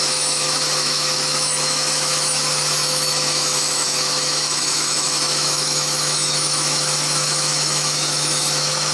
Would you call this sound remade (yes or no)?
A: yes